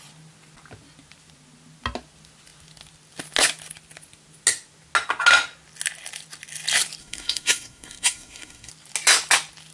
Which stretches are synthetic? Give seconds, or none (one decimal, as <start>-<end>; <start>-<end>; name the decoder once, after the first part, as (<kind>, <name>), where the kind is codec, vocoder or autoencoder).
7.0-8.7 (codec, SNAC)